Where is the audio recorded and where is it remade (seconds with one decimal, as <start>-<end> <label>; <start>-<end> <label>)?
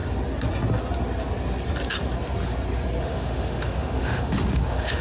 0.0-3.0 recorded; 3.0-5.0 remade